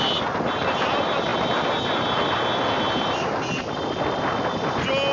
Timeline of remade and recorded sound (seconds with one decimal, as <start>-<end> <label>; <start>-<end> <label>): 0.0-5.1 recorded

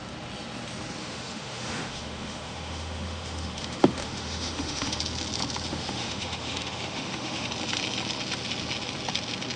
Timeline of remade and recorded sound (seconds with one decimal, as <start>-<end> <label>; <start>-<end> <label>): 0.0-1.0 recorded; 1.0-5.0 remade; 5.0-5.7 recorded; 5.7-7.5 remade; 7.5-9.6 recorded